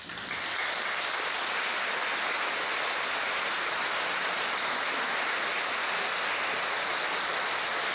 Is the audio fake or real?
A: real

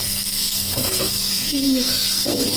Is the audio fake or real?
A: fake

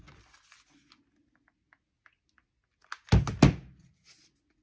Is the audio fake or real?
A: real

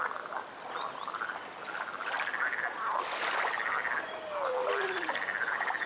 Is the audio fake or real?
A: real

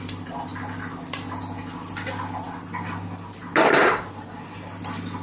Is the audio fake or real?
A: real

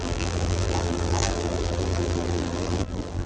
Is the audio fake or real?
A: fake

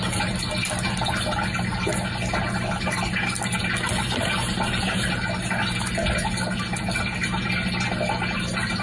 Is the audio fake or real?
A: real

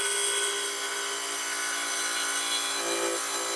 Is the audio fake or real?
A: real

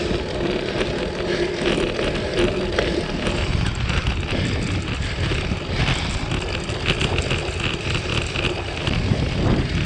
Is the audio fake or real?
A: real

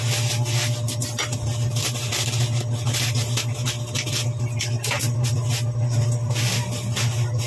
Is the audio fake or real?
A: real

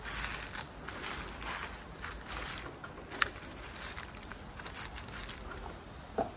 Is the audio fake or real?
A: real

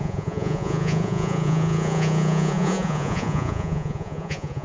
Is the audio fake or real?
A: fake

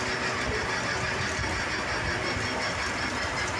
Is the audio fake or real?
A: real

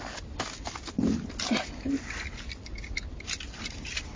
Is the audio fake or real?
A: real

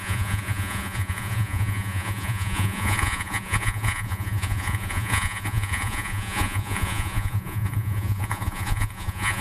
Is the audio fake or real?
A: fake